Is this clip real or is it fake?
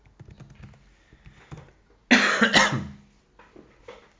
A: real